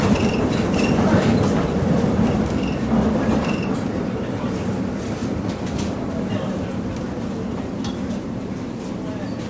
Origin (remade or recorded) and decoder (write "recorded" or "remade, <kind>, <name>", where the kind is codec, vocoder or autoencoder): recorded